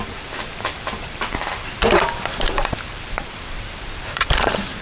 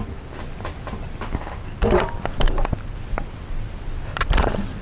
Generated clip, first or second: first